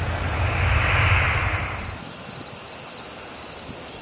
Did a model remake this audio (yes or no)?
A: no